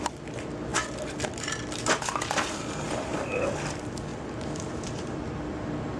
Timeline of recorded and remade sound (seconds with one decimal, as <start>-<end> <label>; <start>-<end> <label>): 0.0-4.1 recorded; 4.1-5.0 remade; 5.0-6.0 recorded